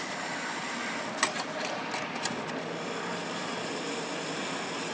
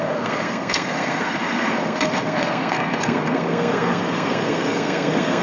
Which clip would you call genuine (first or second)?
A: first